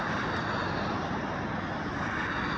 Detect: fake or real real